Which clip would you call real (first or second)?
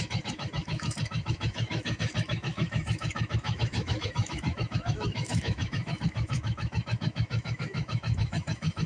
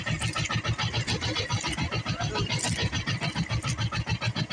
second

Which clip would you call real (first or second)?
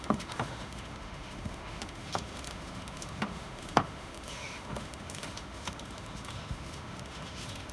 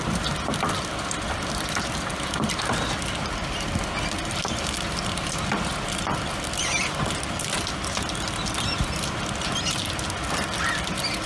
second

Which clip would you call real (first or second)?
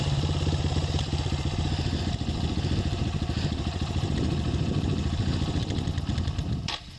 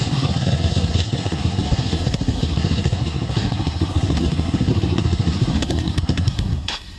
first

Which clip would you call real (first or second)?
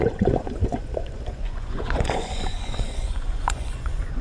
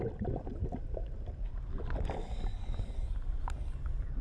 second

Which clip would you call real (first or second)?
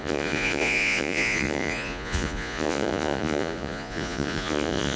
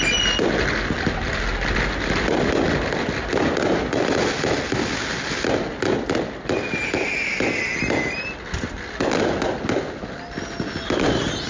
second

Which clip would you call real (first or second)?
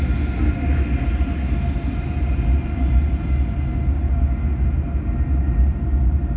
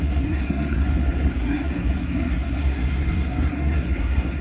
first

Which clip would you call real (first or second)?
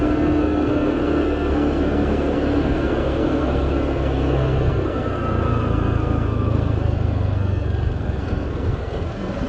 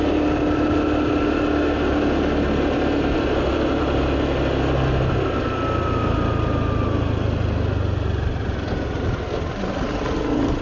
second